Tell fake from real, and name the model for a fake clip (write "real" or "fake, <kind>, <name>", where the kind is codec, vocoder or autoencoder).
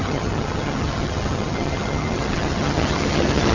fake, vocoder, HiFi-GAN